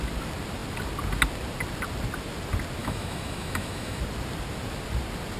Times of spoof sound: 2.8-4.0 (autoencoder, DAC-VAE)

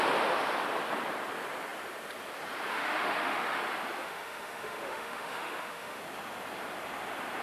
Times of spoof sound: 2.7-3.6 (autoencoder, DAC-VAE); 4.0-6.0

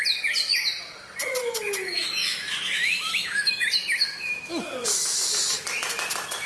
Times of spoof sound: 1.4-5.3 (autoencoder, DAC-VAE)

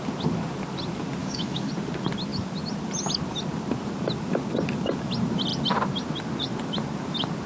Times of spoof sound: 1.2-1.7 (autoencoder, DAC-VAE)

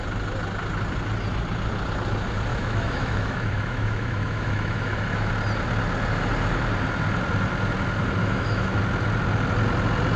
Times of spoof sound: 2.5-5.3 (autoencoder, DAC-VAE); 8.2-8.8